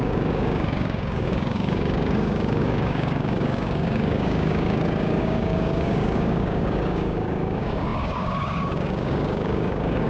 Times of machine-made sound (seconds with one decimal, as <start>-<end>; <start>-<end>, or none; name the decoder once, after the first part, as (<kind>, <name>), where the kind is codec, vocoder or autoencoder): 0.0-10.1 (codec, DAC)